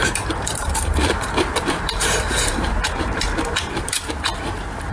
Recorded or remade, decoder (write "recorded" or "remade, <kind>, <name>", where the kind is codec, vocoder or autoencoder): remade, vocoder, BigVGAN v2